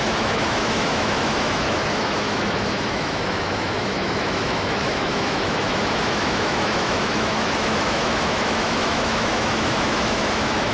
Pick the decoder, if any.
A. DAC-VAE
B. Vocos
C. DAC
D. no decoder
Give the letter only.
A